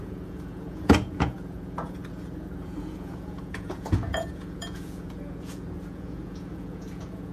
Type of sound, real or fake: fake